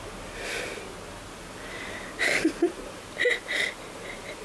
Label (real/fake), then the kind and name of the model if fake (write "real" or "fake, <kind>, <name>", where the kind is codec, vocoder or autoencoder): real